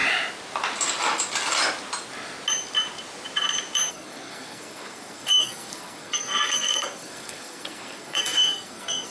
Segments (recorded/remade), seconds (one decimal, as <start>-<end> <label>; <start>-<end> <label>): 0.0-3.9 recorded; 3.9-9.1 remade